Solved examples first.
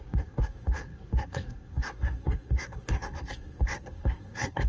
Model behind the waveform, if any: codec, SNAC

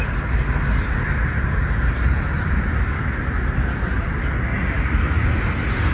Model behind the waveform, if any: none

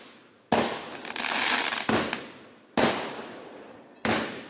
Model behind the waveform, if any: none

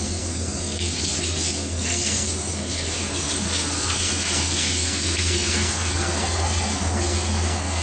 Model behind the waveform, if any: codec, SNAC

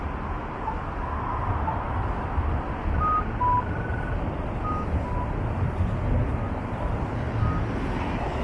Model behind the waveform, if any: none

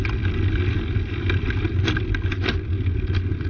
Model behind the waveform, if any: none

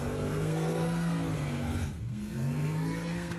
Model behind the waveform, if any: codec, SNAC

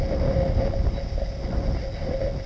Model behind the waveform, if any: none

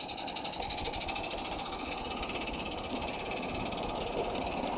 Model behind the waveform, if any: none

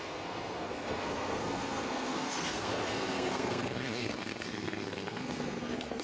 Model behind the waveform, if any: codec, SNAC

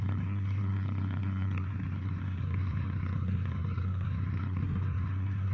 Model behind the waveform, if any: codec, SNAC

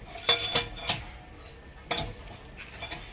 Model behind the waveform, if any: none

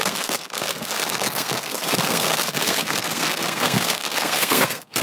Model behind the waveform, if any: codec, SNAC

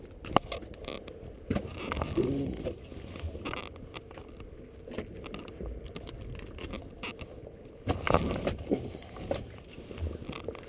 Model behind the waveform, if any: none